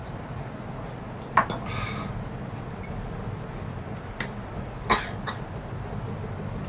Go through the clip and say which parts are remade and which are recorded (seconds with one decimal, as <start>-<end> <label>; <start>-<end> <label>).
0.0-6.7 recorded